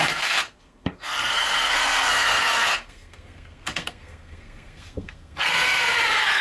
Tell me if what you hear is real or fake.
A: fake